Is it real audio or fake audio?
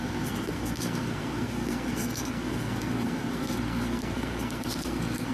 fake